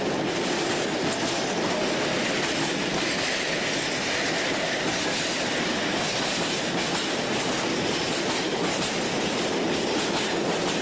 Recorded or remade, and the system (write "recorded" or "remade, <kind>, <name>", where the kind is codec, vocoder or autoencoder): recorded